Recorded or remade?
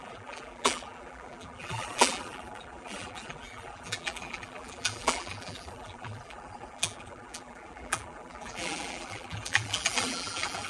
remade